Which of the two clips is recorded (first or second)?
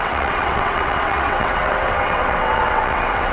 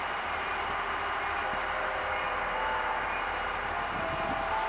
second